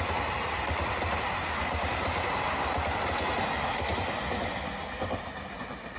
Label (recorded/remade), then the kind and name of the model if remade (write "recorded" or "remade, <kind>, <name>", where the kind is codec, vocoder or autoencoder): recorded